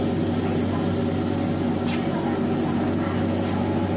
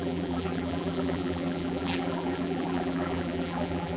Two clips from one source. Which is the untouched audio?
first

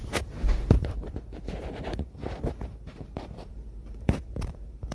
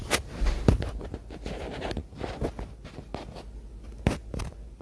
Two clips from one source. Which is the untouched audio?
second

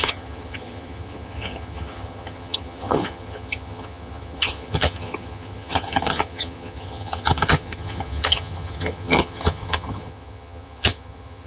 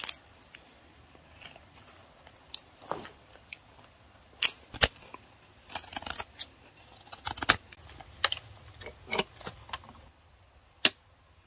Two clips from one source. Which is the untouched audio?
second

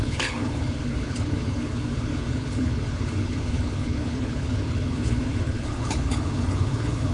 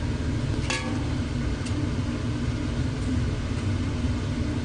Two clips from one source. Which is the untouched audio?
second